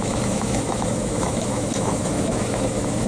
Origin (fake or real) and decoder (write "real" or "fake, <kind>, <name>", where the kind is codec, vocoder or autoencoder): fake, autoencoder, DAC-VAE